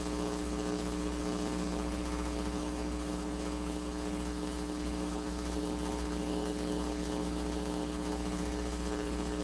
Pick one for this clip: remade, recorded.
remade